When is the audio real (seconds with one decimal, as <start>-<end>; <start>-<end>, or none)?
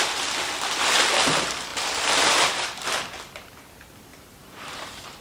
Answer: 0.0-1.7; 2.9-4.1